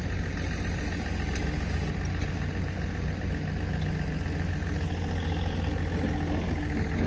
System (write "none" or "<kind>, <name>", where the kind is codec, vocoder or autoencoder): none